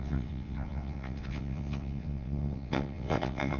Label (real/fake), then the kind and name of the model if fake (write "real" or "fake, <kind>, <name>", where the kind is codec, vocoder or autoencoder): fake, vocoder, WaveNeXt